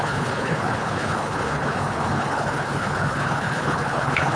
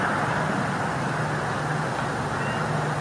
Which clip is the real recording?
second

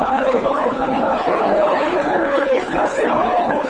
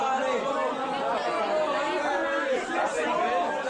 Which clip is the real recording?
second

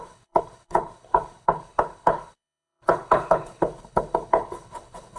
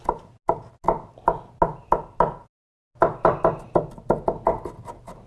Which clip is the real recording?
second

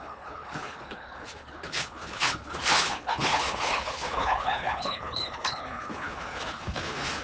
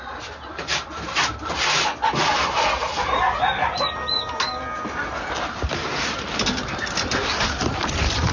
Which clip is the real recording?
second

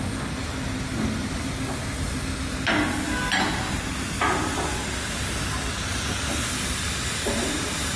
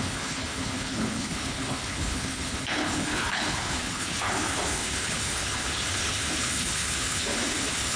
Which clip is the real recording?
first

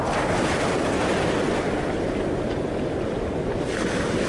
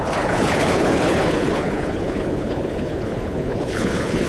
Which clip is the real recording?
first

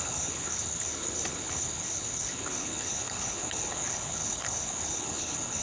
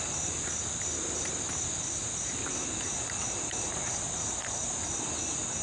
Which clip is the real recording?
second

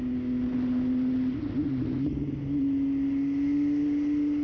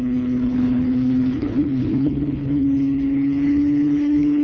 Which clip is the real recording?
first